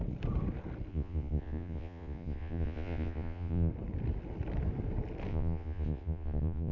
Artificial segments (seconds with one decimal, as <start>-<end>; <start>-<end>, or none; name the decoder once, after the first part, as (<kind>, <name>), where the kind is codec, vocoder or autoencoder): 0.9-3.7 (vocoder, Vocos); 5.3-6.7